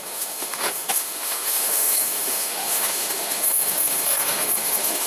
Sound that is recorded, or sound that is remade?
remade